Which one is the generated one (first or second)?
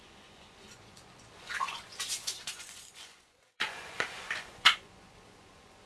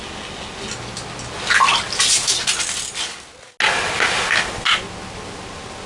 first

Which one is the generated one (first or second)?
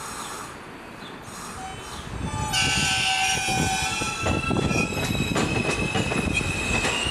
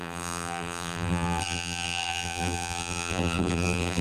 second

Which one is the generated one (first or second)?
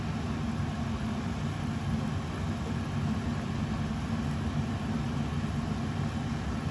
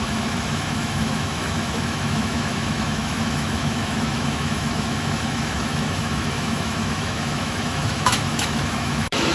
second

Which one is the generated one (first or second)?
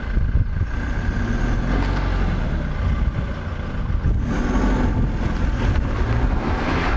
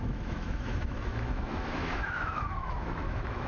second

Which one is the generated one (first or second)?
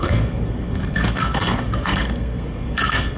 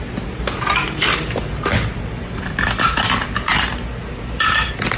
first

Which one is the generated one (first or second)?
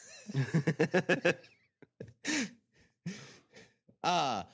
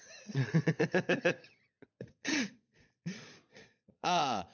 second